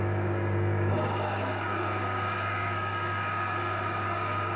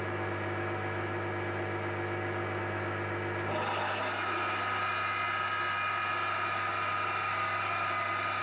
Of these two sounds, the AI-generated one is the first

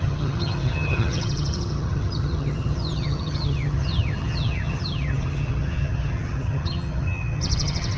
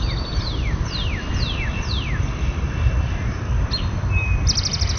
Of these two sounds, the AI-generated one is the first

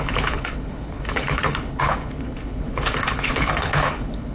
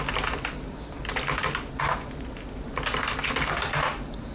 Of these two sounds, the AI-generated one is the first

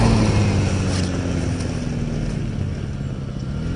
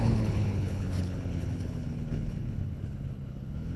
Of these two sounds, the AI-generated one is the second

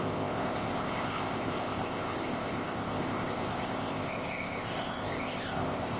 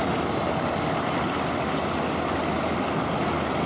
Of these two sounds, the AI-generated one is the first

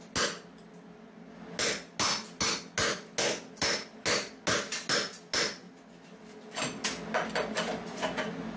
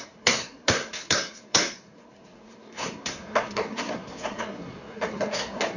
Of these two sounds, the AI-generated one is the second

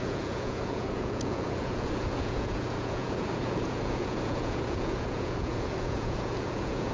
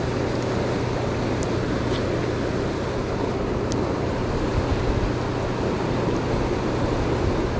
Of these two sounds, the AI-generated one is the first